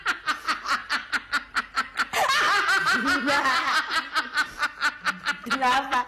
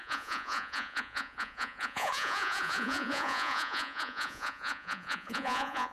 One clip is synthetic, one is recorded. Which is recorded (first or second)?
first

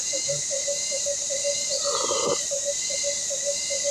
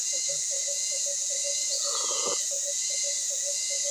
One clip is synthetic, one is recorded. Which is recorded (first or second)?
first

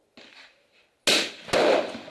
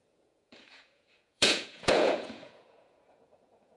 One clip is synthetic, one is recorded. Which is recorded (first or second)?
first